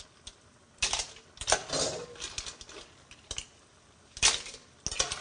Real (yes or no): yes